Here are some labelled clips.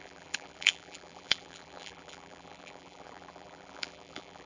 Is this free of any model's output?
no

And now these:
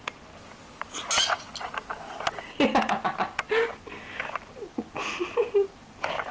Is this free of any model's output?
yes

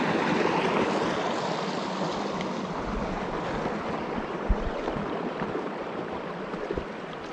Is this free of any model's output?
yes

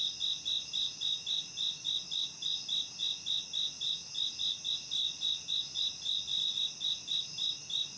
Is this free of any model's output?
yes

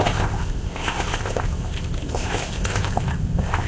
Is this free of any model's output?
no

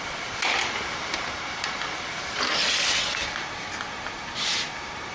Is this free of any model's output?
yes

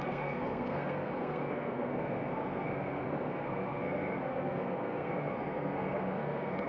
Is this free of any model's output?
no